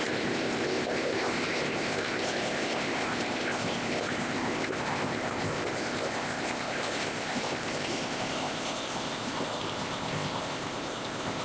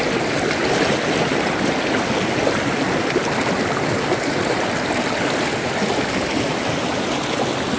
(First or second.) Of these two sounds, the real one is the second